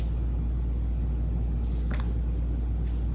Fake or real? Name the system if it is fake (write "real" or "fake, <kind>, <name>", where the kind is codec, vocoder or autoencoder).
real